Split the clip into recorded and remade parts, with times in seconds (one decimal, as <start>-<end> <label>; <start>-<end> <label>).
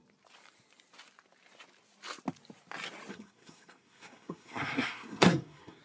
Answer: 0.0-3.1 recorded; 3.1-5.8 remade